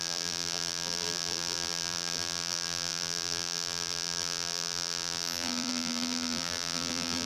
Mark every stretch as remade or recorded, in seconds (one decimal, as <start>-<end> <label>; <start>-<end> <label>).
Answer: 0.0-7.3 remade